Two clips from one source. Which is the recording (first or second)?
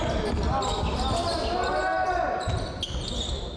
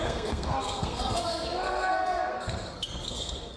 first